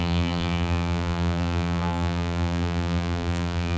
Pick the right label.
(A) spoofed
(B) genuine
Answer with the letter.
A